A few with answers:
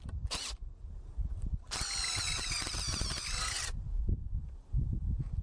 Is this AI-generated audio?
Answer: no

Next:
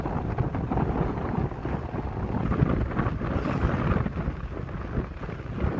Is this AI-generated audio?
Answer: no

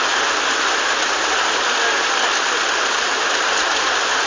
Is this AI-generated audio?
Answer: no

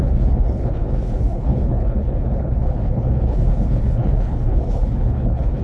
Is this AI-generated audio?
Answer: yes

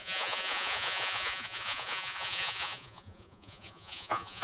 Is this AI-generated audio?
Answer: yes